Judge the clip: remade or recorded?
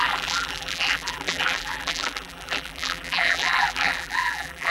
remade